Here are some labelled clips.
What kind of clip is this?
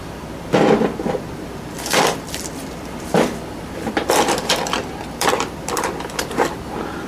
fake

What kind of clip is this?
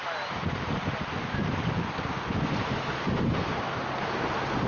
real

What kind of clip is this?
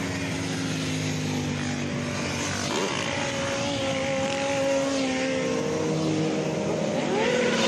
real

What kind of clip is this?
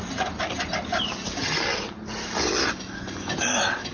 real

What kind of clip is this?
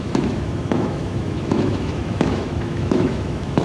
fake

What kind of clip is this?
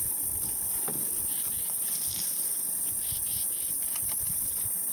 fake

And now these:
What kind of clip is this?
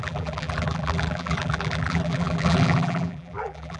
fake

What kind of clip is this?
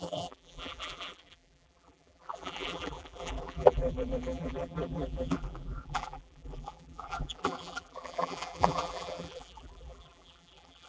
fake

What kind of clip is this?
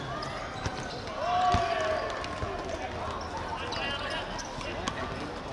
real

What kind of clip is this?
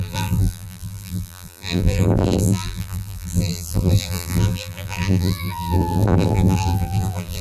fake